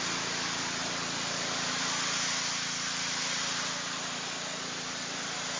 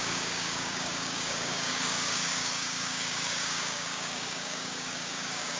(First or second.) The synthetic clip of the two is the second